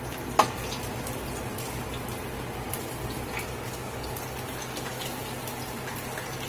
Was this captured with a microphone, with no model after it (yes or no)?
yes